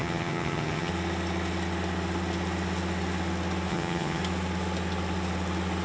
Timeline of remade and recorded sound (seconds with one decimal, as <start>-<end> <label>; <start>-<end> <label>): 0.0-0.9 remade; 0.9-3.7 recorded; 3.7-4.2 remade; 4.2-5.8 recorded